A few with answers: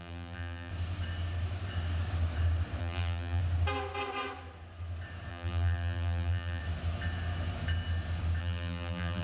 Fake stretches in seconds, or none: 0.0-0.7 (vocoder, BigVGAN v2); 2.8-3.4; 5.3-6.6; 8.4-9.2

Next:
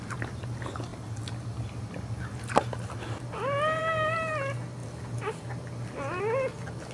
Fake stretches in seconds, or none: none

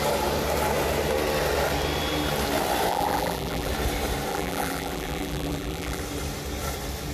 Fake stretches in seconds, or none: 2.9-3.7 (vocoder, BigVGAN v2); 4.3-6.0

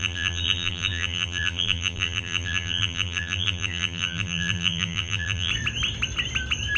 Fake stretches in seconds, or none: 0.0-5.5 (vocoder, BigVGAN v2)

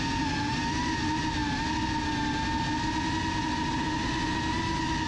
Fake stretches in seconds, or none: none

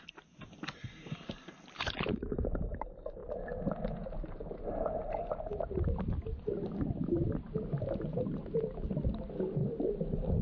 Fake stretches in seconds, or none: none